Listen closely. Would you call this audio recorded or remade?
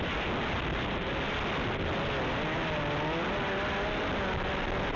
recorded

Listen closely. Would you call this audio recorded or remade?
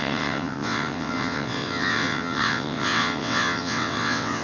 remade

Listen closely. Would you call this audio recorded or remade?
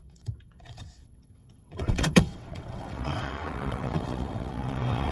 remade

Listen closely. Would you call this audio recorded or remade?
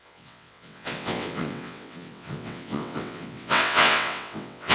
remade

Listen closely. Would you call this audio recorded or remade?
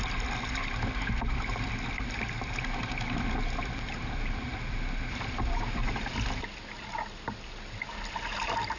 recorded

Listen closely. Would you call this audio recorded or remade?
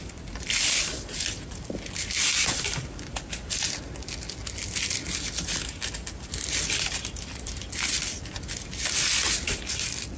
recorded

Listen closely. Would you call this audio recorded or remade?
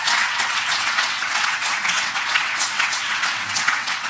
remade